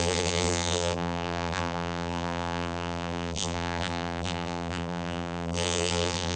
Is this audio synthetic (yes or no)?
yes